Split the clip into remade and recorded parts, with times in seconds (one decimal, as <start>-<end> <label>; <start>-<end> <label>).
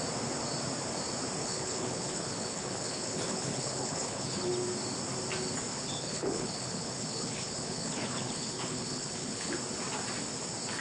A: 0.0-1.4 recorded; 1.4-4.5 remade; 4.5-5.7 recorded; 5.7-9.5 remade; 9.5-10.8 recorded